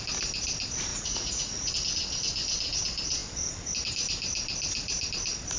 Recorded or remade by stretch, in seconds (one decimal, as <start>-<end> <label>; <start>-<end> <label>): 0.0-0.9 recorded; 0.9-1.7 remade; 1.7-5.6 recorded

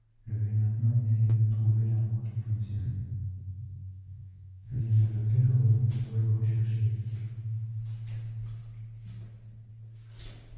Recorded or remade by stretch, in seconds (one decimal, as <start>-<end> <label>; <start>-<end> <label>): 0.0-2.8 recorded; 2.8-4.8 remade; 4.8-10.6 recorded

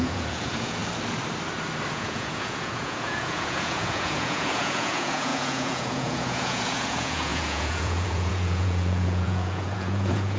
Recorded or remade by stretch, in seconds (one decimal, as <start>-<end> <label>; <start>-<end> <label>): 0.0-0.8 remade; 0.8-1.9 recorded; 1.9-10.4 remade